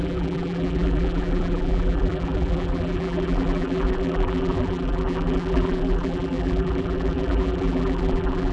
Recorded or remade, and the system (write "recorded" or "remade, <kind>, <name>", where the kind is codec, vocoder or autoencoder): remade, vocoder, BigVGAN v2